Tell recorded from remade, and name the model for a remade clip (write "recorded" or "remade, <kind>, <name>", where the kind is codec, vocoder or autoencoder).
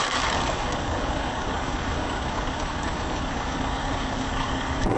remade, codec, DAC